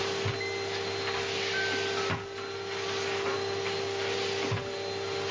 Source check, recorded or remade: recorded